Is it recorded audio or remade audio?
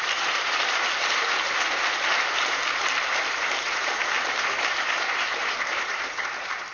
remade